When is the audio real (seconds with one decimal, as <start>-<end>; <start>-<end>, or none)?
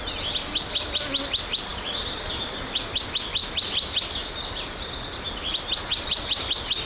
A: 0.0-6.9